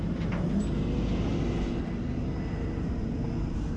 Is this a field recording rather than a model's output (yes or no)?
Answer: yes